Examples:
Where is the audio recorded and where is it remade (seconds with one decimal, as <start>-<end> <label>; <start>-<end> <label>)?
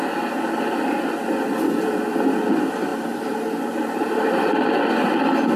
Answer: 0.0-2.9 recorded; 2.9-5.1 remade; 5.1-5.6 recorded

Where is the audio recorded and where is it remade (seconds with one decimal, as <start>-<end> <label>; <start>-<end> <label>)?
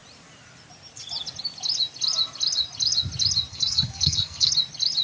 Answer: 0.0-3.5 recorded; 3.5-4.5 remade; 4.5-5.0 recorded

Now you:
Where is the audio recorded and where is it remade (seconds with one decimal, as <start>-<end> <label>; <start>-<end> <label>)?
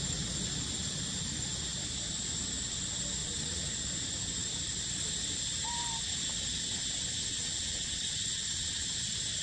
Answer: 0.0-3.2 recorded; 3.2-3.7 remade; 3.7-7.3 recorded; 7.3-8.9 remade; 8.9-9.4 recorded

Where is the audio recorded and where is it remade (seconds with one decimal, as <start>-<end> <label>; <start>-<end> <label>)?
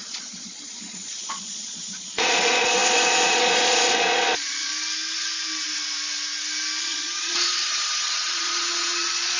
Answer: 0.0-4.7 remade; 4.7-6.8 recorded; 6.8-9.4 remade